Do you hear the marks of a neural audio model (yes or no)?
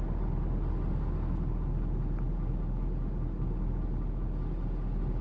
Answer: no